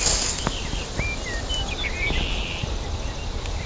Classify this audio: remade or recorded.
recorded